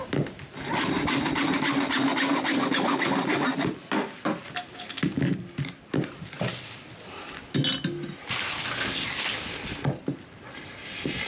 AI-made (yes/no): no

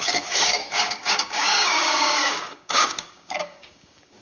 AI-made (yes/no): yes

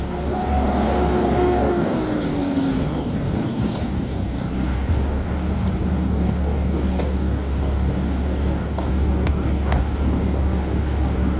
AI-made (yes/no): yes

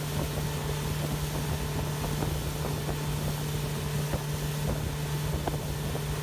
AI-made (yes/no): no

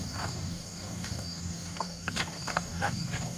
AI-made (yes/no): yes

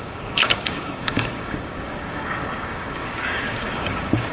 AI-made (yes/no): yes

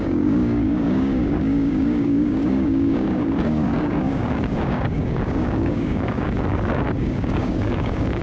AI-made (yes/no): yes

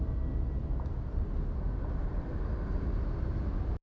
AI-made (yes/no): no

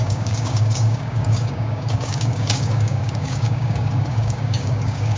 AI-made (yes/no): yes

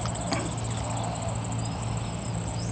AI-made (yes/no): no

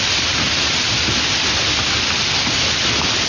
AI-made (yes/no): no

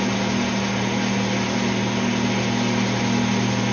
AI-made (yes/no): no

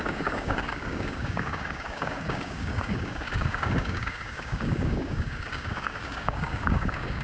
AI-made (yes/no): yes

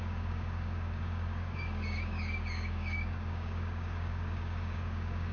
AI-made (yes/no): yes